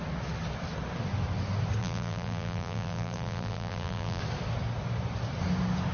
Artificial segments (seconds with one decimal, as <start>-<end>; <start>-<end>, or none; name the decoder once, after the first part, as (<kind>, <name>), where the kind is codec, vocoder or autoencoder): 1.8-4.2 (vocoder, BigVGAN v2)